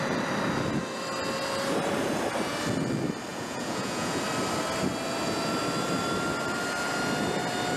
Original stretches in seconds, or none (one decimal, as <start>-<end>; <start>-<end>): 0.0-3.3; 4.2-7.8